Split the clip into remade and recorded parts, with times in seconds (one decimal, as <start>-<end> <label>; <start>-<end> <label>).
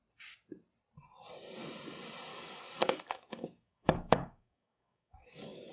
0.0-2.3 recorded; 2.3-5.7 remade